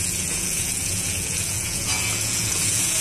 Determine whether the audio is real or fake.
fake